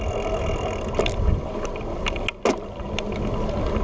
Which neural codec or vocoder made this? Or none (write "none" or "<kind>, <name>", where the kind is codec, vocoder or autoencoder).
none